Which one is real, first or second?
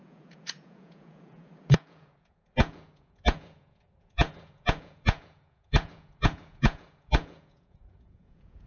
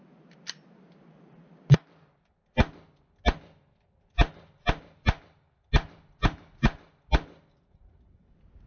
second